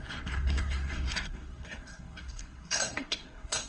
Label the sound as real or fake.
fake